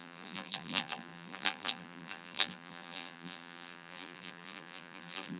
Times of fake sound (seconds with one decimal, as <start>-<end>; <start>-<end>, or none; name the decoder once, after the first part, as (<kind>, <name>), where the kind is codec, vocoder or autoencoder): 0.0-5.4 (vocoder, BigVGAN v2)